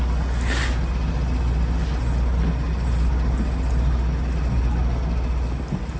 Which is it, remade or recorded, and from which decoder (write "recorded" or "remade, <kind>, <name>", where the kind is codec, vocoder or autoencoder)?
recorded